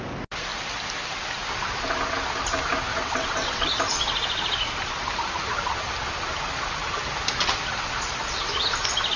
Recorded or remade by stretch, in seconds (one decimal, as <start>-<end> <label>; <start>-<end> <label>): 0.0-2.9 recorded; 2.9-3.7 remade; 3.7-9.2 recorded